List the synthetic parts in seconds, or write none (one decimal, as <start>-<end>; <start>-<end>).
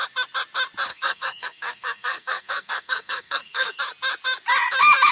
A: 0.9-3.8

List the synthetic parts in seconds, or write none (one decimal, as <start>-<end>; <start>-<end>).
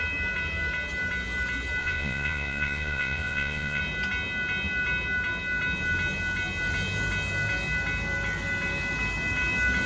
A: 1.8-3.8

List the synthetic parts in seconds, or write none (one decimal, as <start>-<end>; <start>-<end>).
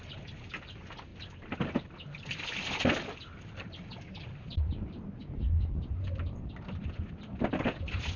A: 1.1-4.7; 5.2-6.5